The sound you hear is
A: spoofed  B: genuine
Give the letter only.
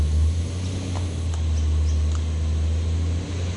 B